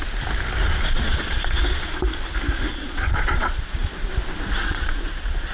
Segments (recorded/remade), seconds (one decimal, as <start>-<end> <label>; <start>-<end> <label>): 0.0-0.6 recorded; 0.6-1.9 remade; 1.9-2.7 recorded; 2.7-4.1 remade; 4.1-4.6 recorded; 4.6-5.5 remade